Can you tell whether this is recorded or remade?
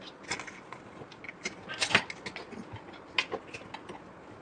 recorded